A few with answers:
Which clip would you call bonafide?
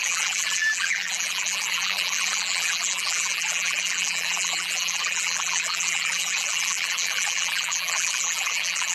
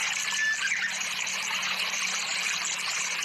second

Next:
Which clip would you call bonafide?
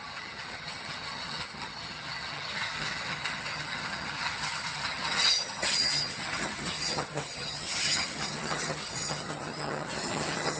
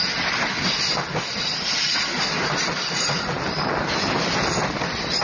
second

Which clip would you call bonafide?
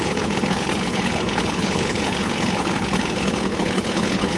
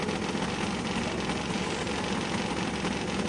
second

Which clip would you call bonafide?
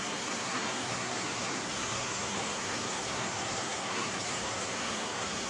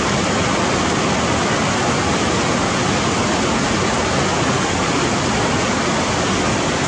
second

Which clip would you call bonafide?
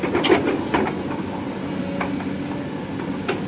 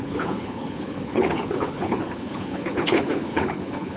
first